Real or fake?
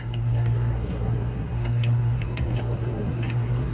fake